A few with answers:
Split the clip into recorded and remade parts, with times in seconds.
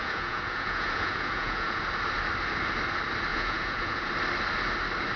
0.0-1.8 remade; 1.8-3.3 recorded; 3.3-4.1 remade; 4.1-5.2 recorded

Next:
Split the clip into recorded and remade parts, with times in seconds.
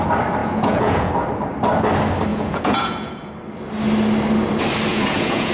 0.0-0.4 recorded; 0.4-1.1 remade; 1.1-2.3 recorded; 2.3-3.3 remade; 3.3-4.9 recorded; 4.9-5.5 remade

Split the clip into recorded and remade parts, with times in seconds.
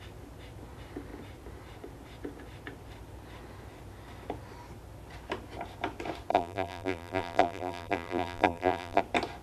0.0-6.3 recorded; 6.3-9.0 remade; 9.0-9.4 recorded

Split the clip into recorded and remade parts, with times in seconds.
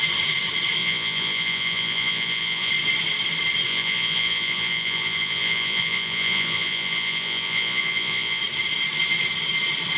0.0-0.8 recorded; 0.8-2.7 remade; 2.7-3.7 recorded; 3.7-8.4 remade; 8.4-10.0 recorded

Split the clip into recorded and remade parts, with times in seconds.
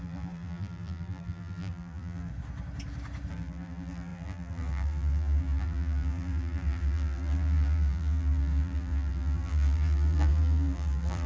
0.0-2.3 remade; 2.3-3.3 recorded; 3.3-11.3 remade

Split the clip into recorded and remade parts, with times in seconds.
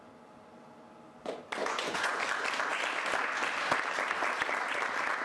0.0-1.6 recorded; 1.6-2.2 remade; 2.2-5.2 recorded